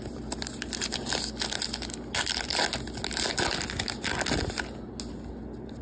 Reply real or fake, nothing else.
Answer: real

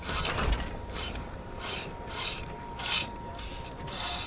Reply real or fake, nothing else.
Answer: fake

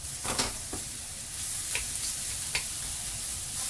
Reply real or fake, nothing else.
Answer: real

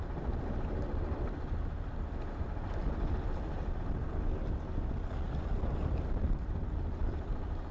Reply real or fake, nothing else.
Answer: real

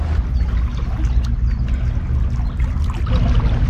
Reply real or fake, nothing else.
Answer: real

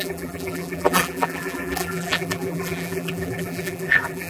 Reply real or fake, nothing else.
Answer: fake